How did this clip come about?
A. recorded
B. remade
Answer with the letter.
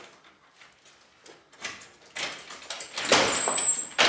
A